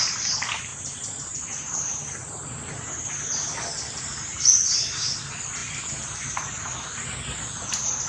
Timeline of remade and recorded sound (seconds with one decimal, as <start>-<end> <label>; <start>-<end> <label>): 0.0-0.7 recorded; 0.7-4.0 remade; 4.0-5.6 recorded; 5.6-6.3 remade; 6.3-8.1 recorded